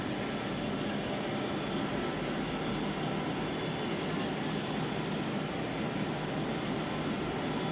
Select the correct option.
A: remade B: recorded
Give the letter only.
B